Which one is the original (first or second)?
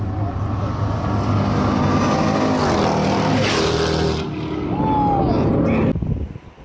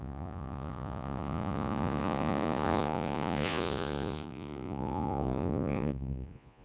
first